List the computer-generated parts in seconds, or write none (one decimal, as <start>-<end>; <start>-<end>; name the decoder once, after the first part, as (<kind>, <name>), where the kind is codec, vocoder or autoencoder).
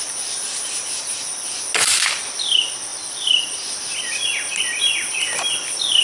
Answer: none